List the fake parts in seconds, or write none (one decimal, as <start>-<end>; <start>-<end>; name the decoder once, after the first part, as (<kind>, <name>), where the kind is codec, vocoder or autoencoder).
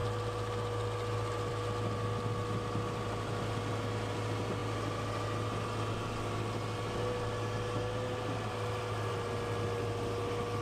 none